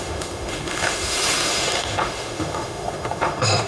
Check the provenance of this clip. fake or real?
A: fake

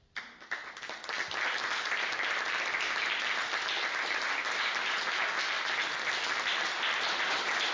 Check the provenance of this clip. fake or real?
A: real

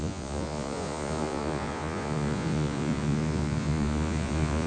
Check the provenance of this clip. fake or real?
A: fake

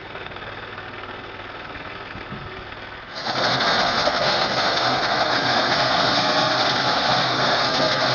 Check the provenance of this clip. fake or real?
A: fake